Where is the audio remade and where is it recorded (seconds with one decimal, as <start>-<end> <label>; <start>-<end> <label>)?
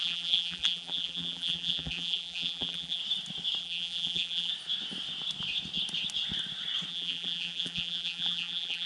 0.0-3.0 remade; 3.0-3.6 recorded; 3.6-4.5 remade; 4.5-6.9 recorded; 6.9-8.9 remade